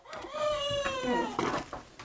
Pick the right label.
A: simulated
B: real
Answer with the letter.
B